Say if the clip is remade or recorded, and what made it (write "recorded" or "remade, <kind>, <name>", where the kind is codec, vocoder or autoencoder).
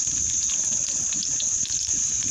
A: recorded